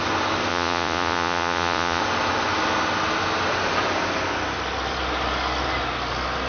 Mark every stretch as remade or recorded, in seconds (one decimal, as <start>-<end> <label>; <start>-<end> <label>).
0.0-0.5 recorded; 0.5-2.0 remade; 2.0-6.5 recorded